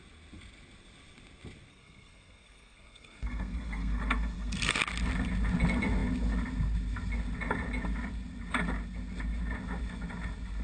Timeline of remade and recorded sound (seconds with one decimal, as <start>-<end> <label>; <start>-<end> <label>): 0.0-1.7 recorded; 1.7-4.8 remade; 4.8-10.6 recorded

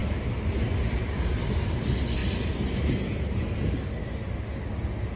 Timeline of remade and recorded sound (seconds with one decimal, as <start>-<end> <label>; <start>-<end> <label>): 0.0-5.2 recorded

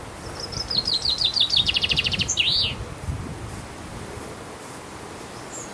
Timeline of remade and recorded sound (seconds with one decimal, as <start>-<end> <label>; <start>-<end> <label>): 0.0-5.7 recorded